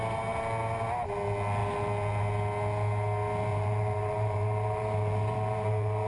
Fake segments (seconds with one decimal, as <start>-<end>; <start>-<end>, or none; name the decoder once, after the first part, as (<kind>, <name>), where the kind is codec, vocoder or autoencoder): 3.5-6.1 (vocoder, BigVGAN v2)